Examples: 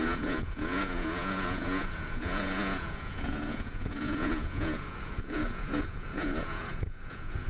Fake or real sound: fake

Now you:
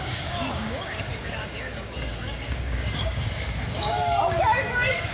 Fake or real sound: fake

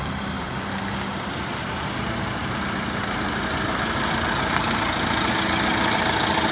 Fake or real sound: real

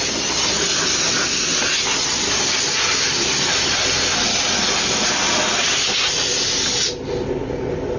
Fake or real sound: real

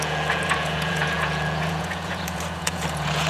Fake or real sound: fake